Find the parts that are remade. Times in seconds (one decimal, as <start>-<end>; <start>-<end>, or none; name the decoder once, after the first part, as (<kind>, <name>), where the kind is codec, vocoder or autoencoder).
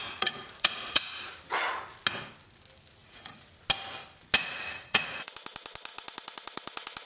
0.0-1.1 (vocoder, Vocos); 3.0-3.5; 4.4-5.3